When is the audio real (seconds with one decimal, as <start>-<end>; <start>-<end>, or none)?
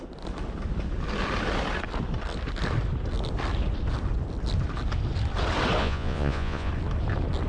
0.0-5.8; 6.7-7.5